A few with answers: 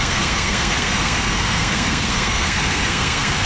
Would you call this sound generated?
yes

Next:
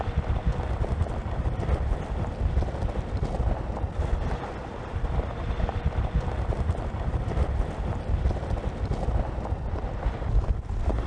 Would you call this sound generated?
no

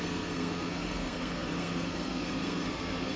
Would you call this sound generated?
yes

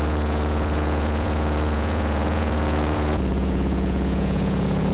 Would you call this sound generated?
yes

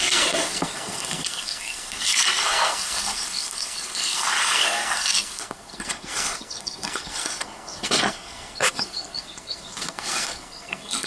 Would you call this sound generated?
yes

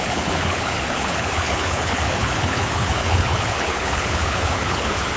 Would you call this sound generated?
yes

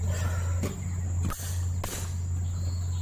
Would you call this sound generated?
no